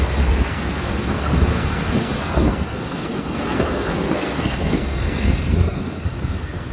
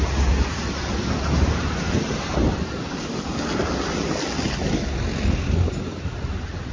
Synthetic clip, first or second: first